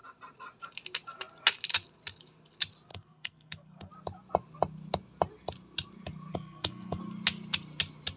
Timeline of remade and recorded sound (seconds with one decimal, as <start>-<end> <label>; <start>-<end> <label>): 0.0-2.9 recorded; 2.9-3.9 remade; 3.9-6.3 recorded; 6.3-7.0 remade; 7.0-8.2 recorded